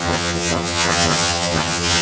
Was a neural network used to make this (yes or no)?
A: yes